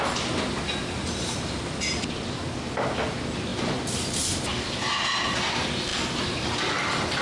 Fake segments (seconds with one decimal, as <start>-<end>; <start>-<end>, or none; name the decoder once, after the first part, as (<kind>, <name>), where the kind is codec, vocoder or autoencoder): none